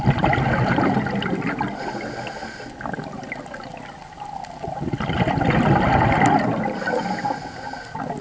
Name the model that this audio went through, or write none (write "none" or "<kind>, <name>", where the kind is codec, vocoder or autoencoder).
none